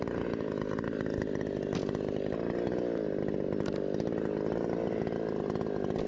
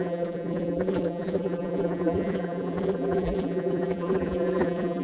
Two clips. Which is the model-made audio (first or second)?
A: second